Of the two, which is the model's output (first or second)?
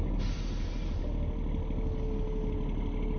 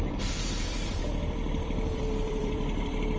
second